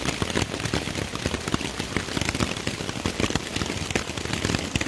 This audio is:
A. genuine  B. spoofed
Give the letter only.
A